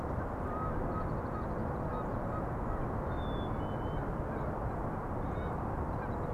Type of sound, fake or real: real